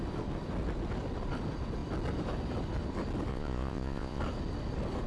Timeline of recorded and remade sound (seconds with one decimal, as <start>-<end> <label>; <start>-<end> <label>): 0.0-3.3 recorded; 3.3-4.2 remade; 4.2-5.1 recorded